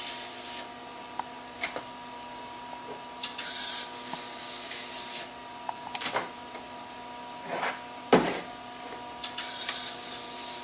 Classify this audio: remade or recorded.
recorded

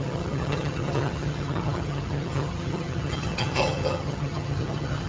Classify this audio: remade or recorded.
remade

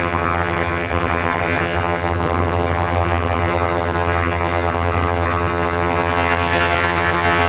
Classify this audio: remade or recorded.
remade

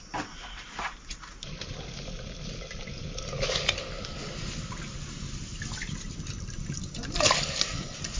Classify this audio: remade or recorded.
recorded